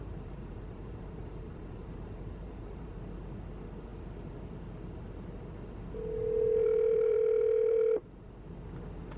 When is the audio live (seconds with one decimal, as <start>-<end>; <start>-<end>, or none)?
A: 2.9-6.6; 8.2-9.2